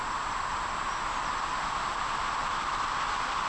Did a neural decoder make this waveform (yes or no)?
no